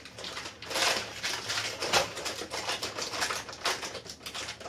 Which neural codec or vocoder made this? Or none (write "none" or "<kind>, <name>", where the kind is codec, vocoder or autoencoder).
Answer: none